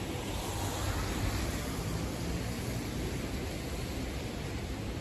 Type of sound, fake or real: real